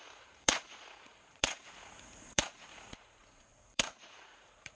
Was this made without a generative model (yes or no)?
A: no